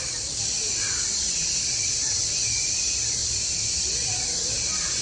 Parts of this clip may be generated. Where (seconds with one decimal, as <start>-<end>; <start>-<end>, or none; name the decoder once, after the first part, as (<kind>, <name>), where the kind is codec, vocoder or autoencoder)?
3.2-4.2 (vocoder, BigVGAN v2)